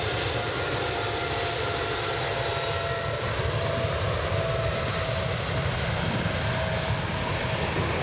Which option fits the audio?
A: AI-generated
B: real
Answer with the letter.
B